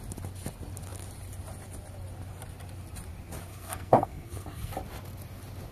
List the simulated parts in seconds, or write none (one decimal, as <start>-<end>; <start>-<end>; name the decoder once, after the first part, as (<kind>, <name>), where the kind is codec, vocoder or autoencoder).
3.5-4.7 (codec, SNAC)